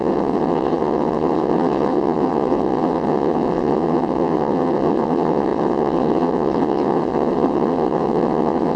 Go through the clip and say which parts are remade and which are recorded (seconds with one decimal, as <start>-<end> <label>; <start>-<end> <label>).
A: 0.0-8.8 remade